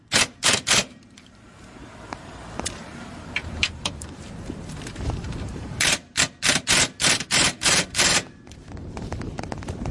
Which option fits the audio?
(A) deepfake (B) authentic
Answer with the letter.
A